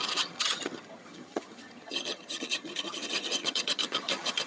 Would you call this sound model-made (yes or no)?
yes